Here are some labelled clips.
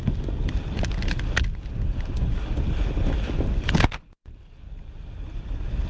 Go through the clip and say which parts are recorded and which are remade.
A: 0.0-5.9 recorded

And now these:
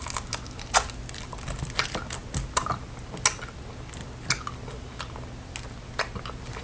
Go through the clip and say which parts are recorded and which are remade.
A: 0.0-6.6 recorded

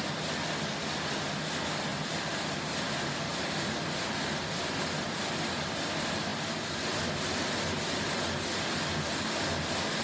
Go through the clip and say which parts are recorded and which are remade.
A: 0.0-1.9 recorded; 1.9-2.6 remade; 2.6-3.3 recorded; 3.3-4.4 remade; 4.4-10.0 recorded